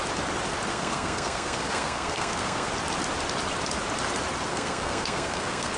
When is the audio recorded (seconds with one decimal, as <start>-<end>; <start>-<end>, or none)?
0.0-0.7; 2.7-4.5